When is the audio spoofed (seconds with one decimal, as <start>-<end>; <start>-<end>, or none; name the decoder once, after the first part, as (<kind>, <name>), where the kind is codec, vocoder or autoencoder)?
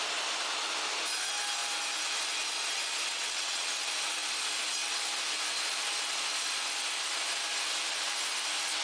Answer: 3.1-3.8 (vocoder, WaveNeXt)